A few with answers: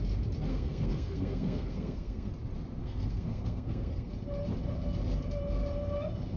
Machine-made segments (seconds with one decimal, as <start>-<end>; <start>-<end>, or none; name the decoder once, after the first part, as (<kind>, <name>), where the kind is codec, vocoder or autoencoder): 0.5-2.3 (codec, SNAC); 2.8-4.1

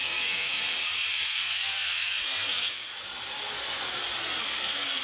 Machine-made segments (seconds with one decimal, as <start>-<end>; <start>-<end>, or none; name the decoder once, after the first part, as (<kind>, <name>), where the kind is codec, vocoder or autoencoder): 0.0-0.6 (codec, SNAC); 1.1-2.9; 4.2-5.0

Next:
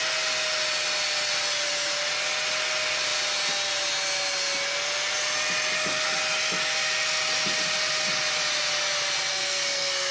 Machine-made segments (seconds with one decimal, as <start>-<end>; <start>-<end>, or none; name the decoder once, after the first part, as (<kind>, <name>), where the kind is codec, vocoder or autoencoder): 9.3-10.1 (codec, SNAC)

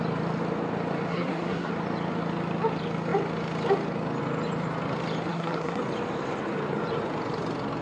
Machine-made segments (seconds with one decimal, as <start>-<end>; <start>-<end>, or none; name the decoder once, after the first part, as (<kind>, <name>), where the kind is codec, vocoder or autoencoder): 1.1-1.7 (codec, SNAC); 5.3-5.8

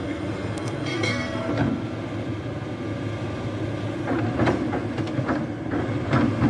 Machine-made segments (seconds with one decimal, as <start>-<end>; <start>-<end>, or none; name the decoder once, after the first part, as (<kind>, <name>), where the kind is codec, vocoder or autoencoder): 0.0-1.5 (codec, SNAC)

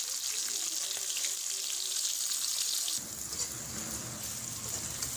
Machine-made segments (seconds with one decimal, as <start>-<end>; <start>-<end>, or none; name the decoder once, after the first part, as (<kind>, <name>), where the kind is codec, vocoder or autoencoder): none

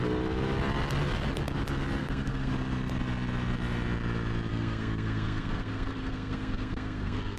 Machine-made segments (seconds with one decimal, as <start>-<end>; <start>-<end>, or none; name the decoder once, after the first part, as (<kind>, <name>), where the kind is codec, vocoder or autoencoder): 2.0-2.5 (codec, SNAC); 4.5-7.4

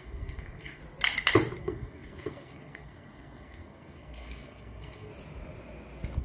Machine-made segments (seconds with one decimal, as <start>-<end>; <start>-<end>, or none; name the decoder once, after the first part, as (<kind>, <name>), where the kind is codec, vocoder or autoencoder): 0.0-0.8 (codec, SNAC); 1.6-5.1